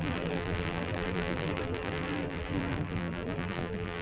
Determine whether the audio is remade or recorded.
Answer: remade